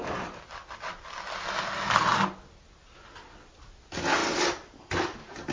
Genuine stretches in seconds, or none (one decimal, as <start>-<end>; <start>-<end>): 0.0-5.5